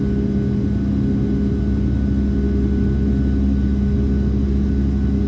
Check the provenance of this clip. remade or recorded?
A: recorded